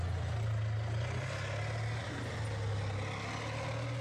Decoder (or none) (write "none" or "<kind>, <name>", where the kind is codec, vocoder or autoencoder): none